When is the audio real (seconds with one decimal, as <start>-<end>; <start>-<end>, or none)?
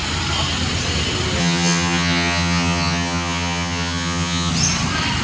0.0-1.4; 4.5-5.2